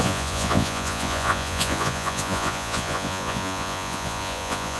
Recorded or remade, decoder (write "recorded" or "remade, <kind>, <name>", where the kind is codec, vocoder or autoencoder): remade, vocoder, Vocos